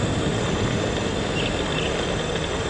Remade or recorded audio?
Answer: recorded